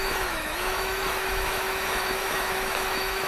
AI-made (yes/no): yes